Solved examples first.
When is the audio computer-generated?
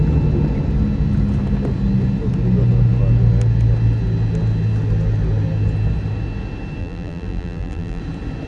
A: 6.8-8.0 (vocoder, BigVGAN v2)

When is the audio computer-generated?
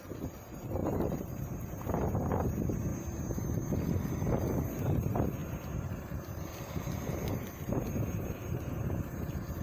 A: none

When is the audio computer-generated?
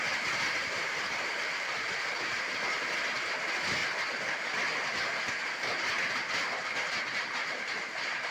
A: 0.6-2.6 (vocoder, BigVGAN v2); 7.4-8.3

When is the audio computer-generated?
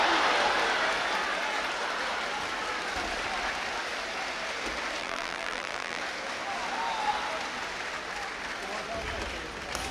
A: 5.0-6.0 (vocoder, BigVGAN v2)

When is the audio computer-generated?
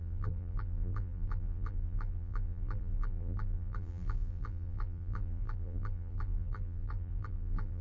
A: 0.0-7.8 (vocoder, BigVGAN v2)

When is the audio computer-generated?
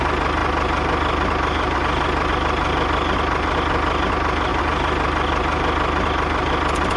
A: none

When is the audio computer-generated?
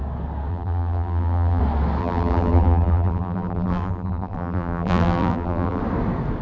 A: 0.5-1.6 (vocoder, BigVGAN v2); 2.0-5.8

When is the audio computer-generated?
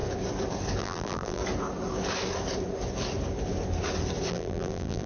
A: 0.8-1.4 (vocoder, BigVGAN v2); 4.3-5.1